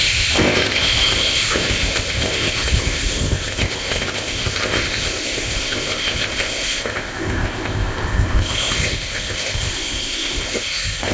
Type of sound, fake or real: fake